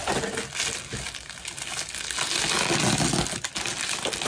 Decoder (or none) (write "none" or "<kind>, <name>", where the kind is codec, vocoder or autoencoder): none